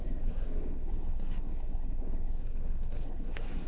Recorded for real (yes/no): no